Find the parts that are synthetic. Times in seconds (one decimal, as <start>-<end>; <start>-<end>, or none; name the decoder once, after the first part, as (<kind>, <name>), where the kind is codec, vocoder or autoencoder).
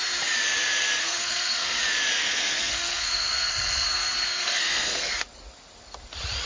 1.0-1.8 (codec, SNAC); 2.2-5.1